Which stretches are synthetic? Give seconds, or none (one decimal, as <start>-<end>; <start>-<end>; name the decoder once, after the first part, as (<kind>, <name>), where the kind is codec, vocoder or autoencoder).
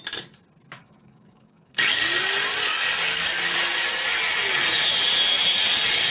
0.8-2.0 (codec, DAC); 2.7-3.4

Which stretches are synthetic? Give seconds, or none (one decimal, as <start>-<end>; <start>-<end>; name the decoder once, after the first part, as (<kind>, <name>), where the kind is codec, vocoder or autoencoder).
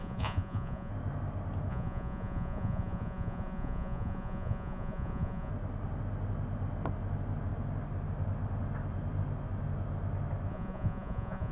0.0-0.9 (vocoder, Vocos); 1.7-5.5; 10.5-11.5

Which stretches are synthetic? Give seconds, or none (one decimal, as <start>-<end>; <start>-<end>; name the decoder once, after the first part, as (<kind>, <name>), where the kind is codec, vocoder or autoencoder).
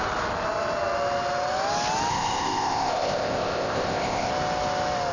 2.1-4.3 (codec, ZipCodec)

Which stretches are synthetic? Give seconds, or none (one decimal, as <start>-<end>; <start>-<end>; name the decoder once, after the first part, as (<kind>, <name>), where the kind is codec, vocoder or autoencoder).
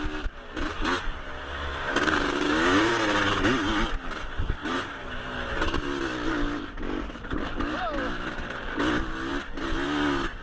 1.9-2.9 (codec, DAC)